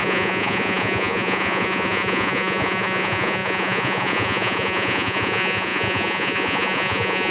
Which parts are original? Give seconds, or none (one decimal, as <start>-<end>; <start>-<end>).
none